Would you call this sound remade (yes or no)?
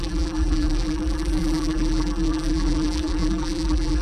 yes